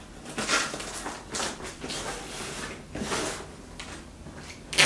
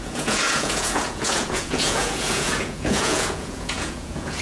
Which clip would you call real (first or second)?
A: first